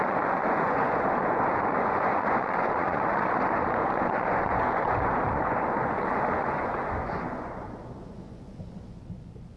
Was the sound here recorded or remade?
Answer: remade